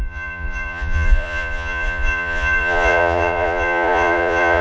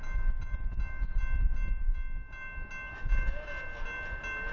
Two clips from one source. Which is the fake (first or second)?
first